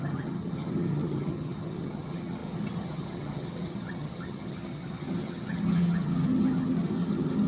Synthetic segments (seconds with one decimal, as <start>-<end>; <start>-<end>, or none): 0.0-7.5